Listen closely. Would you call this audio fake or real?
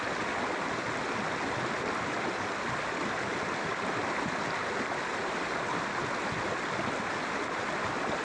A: real